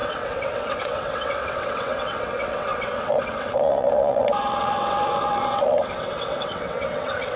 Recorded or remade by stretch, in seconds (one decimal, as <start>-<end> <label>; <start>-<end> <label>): 0.0-7.4 remade